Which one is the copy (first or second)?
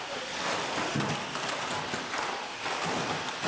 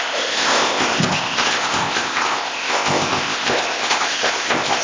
second